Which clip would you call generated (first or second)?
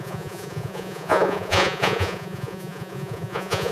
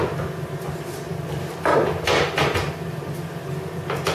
first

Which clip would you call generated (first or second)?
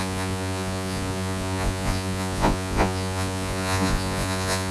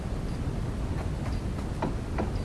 first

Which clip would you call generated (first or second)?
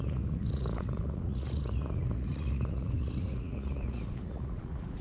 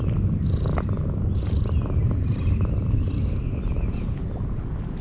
first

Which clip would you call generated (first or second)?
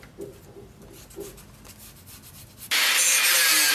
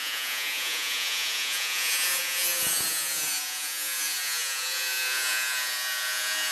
second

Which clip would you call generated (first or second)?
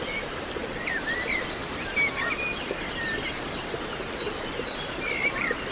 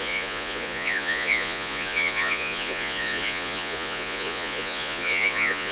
second